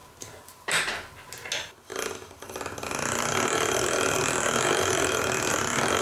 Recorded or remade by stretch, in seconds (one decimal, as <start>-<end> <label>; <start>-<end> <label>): 0.0-6.0 recorded